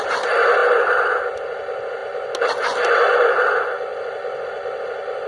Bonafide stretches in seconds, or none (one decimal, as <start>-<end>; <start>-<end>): 0.0-5.3